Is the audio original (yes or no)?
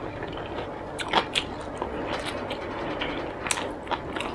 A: yes